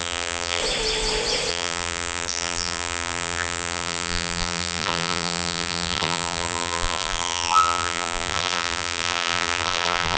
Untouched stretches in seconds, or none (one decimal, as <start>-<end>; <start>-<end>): 0.6-1.5

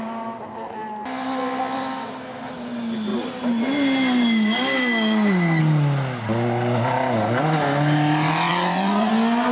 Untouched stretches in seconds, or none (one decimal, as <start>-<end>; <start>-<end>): 0.0-8.5; 9.1-9.5